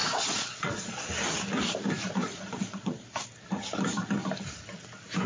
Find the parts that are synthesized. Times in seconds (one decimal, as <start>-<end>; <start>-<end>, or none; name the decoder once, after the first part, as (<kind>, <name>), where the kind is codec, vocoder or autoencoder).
0.0-1.1 (vocoder, Vocos); 2.2-3.0